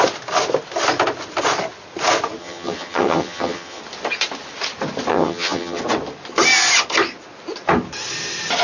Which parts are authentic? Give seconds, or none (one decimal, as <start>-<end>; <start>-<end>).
0.0-2.4; 3.8-5.1; 5.8-8.6